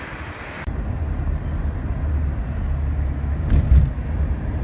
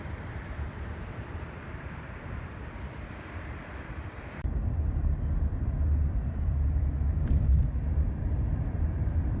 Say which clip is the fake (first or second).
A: second